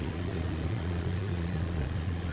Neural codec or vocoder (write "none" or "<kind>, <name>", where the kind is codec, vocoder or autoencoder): vocoder, Vocos